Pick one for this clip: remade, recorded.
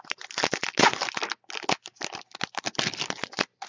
recorded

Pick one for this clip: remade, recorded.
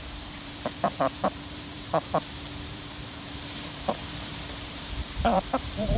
remade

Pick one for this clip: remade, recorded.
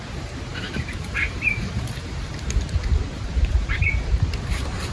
remade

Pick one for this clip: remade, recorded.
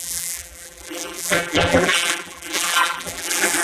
remade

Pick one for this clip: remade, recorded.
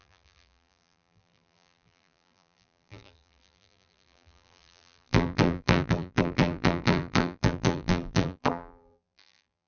remade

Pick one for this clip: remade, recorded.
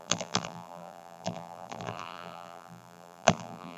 remade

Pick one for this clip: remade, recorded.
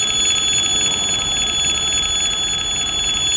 recorded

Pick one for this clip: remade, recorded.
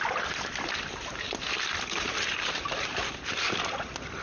remade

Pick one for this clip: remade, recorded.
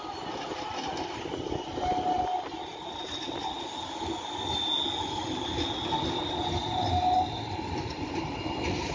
recorded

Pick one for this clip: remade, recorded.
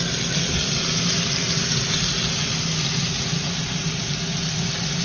recorded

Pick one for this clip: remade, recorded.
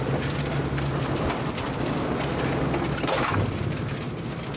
recorded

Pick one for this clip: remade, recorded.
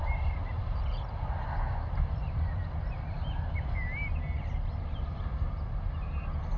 recorded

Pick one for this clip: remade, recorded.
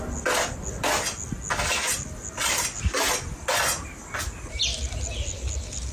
recorded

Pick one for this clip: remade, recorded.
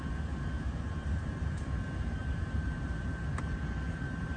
remade